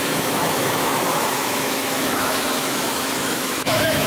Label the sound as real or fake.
fake